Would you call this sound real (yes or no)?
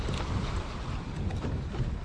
yes